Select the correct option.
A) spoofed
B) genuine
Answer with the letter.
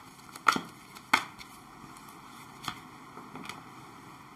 B